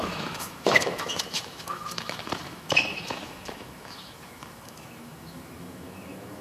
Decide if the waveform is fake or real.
fake